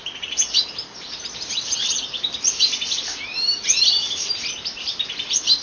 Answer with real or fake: fake